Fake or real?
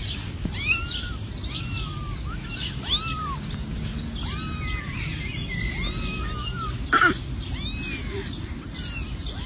real